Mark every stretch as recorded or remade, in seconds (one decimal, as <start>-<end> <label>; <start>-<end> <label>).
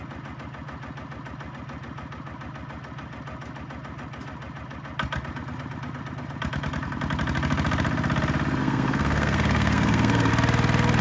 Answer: 0.0-8.6 recorded; 8.6-10.3 remade; 10.3-11.0 recorded